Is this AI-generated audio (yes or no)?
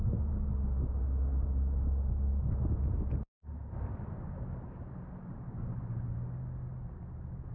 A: no